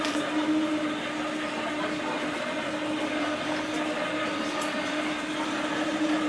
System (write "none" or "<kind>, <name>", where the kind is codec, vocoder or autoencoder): none